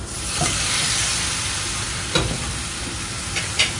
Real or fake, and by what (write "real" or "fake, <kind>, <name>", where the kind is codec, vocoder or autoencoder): real